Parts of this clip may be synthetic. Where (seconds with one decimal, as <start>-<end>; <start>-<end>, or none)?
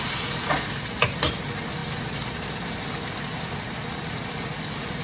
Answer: none